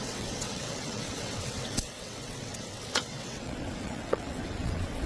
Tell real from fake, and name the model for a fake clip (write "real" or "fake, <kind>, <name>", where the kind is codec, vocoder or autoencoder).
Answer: fake, vocoder, WaveNeXt